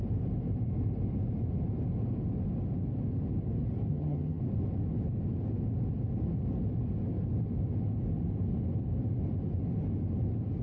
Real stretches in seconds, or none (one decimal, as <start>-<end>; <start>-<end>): 0.0-3.9; 4.4-10.6